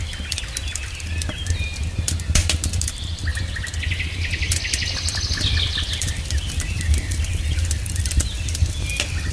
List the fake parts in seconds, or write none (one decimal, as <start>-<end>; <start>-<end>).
none